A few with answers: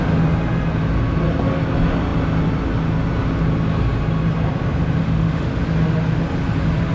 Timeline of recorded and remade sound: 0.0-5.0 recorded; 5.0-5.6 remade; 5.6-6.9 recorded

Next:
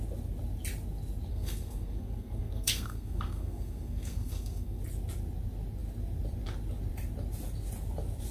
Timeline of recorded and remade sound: 0.0-1.3 recorded; 1.3-4.8 remade; 4.8-8.3 recorded

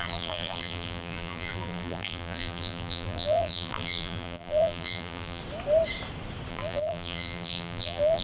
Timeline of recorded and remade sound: 0.0-5.4 remade; 5.4-6.5 recorded; 6.5-8.2 remade

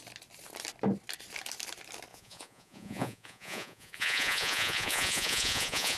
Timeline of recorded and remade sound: 0.0-2.1 recorded; 2.1-6.0 remade

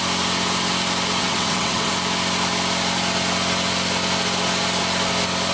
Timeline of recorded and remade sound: 0.0-1.2 recorded; 1.2-1.9 remade; 1.9-5.5 recorded

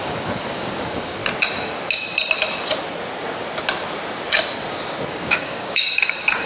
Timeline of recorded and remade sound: 0.0-1.2 remade; 1.2-5.1 recorded; 5.1-6.5 remade

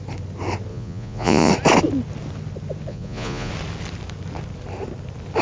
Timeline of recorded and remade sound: 0.0-0.7 recorded; 0.7-1.5 remade; 1.5-2.9 recorded; 2.9-3.5 remade; 3.5-5.4 recorded

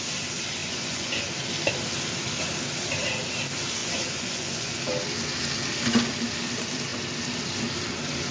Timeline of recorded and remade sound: 0.0-0.6 recorded; 0.6-1.2 remade; 1.2-3.8 recorded; 3.8-4.8 remade; 4.8-8.3 recorded